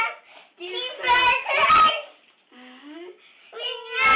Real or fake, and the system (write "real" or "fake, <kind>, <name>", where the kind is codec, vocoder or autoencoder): real